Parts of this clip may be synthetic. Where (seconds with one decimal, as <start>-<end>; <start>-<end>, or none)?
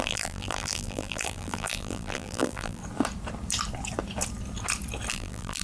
0.0-2.8; 5.1-5.6